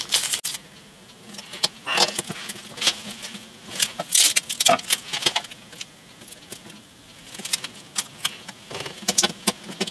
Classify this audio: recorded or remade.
recorded